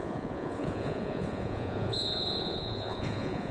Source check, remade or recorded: remade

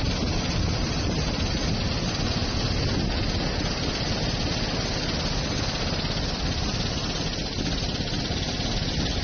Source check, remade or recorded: recorded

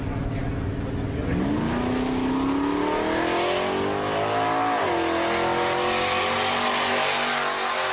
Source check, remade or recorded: recorded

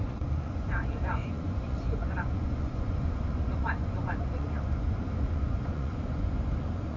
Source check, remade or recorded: remade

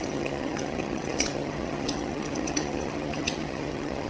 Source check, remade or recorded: remade